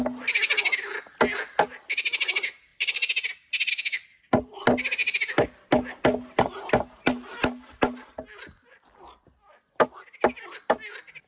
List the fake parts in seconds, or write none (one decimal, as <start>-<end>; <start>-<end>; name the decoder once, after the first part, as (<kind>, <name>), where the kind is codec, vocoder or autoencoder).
2.7-3.7 (vocoder, BigVGAN v2)